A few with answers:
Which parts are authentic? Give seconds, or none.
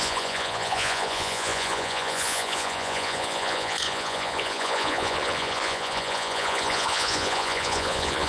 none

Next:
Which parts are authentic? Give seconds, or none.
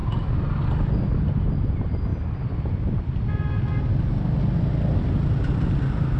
0.0-6.2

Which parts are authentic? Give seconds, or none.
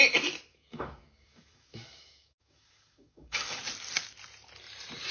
0.0-0.5; 3.6-5.1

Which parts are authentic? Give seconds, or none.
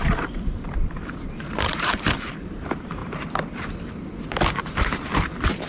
3.0-3.8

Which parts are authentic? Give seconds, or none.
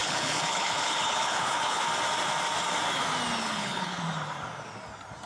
1.9-3.4; 4.0-5.3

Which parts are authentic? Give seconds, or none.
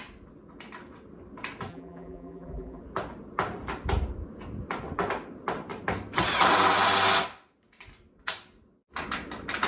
0.0-1.7; 2.8-9.7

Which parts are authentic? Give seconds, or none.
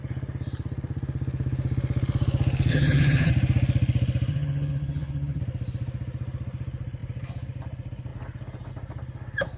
0.0-2.7; 3.3-4.3; 5.4-9.6